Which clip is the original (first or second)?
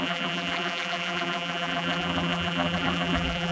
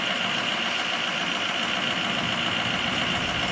second